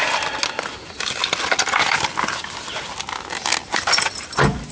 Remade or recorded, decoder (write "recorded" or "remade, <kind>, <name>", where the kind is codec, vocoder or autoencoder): recorded